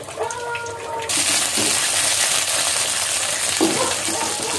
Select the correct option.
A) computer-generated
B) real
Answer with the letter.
B